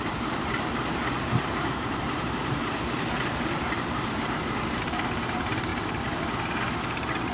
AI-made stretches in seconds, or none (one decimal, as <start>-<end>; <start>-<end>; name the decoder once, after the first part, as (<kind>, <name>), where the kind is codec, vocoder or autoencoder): 0.0-2.6 (vocoder, BigVGAN v2); 3.3-5.7; 6.8-7.3